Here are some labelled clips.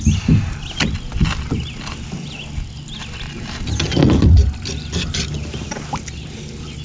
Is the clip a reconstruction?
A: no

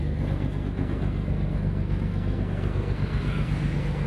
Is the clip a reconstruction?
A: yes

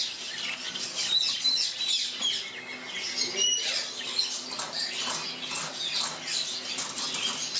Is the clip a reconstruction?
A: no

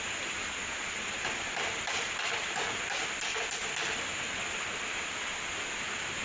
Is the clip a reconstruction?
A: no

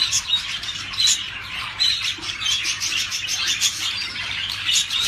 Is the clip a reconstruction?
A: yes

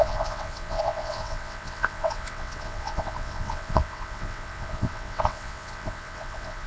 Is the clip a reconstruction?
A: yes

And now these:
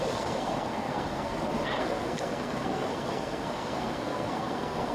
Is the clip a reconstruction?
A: yes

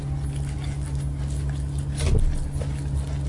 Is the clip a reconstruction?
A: no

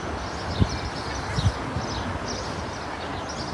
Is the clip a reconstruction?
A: no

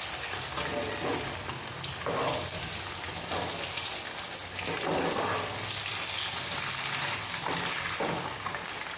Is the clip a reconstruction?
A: no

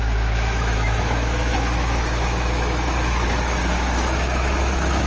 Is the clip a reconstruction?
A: yes